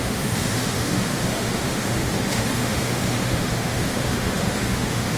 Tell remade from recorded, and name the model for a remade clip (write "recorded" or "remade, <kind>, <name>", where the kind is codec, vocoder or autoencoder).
remade, autoencoder, DAC-VAE